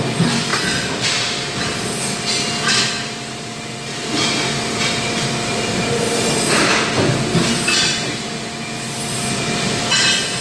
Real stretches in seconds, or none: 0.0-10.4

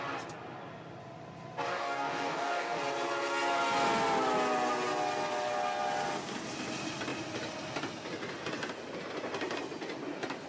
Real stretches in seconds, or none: 0.0-1.7; 2.8-10.5

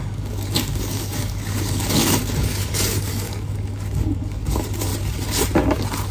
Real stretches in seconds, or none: 4.9-6.1

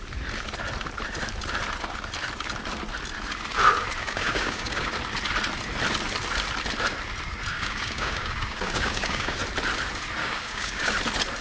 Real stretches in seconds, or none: 0.0-4.0; 4.9-7.5; 9.4-10.2; 10.9-11.4